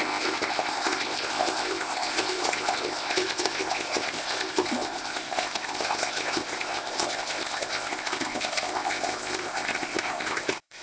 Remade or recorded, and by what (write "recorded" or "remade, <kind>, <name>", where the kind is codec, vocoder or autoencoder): remade, codec, ZipCodec